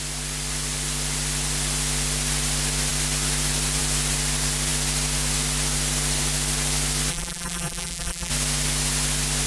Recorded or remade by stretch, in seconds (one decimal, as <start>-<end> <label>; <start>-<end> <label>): 0.0-7.1 recorded; 7.1-8.3 remade; 8.3-9.5 recorded